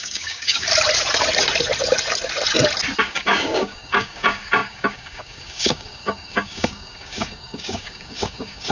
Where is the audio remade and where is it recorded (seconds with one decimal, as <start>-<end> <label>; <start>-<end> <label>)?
0.0-0.7 remade; 0.7-3.0 recorded; 3.0-8.7 remade